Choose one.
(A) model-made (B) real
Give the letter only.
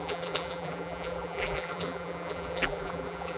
A